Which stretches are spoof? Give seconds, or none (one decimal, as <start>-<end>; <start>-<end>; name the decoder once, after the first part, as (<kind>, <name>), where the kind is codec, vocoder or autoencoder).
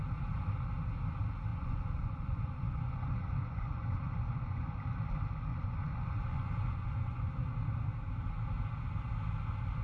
1.5-4.7 (vocoder, Vocos); 5.5-7.4